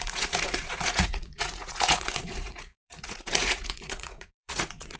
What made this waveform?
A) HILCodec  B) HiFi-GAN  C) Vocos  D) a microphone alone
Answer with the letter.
C